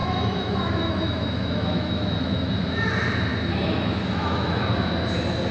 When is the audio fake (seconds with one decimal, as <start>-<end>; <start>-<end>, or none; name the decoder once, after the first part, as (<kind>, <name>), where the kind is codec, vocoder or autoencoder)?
0.0-2.5 (autoencoder, DAC-VAE); 3.3-4.6